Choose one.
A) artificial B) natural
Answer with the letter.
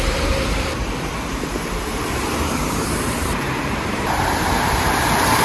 A